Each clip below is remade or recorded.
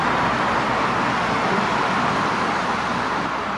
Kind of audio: remade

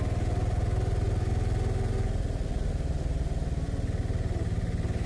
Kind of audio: recorded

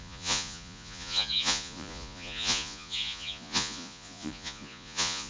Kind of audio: remade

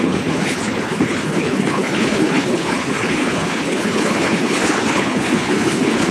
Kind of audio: remade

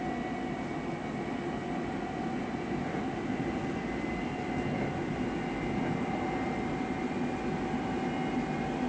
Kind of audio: recorded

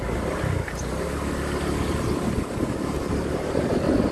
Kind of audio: recorded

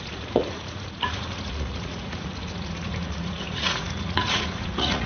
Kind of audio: remade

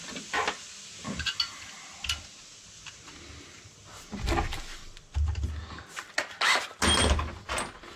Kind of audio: recorded